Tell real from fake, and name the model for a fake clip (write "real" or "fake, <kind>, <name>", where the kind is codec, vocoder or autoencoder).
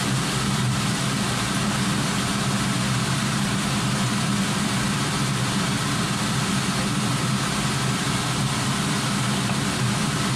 real